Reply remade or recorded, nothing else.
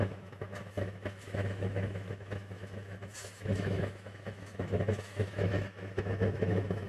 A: remade